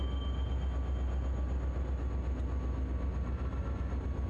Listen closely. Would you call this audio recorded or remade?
recorded